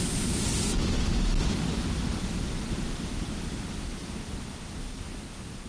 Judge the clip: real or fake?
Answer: real